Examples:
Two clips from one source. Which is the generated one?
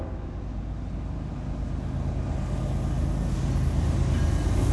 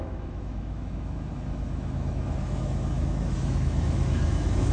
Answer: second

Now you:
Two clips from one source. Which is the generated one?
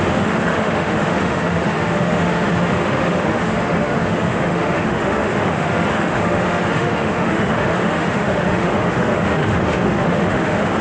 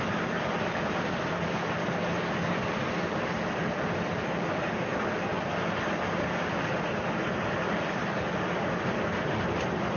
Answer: first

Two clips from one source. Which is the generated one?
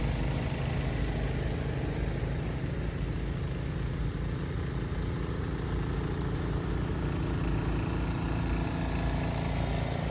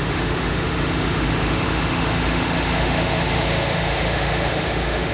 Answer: second